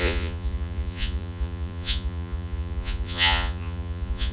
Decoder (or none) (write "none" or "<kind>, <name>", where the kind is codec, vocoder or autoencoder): vocoder, Vocos